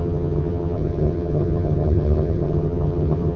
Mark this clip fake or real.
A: fake